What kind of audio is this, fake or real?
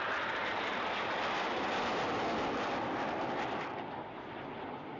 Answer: real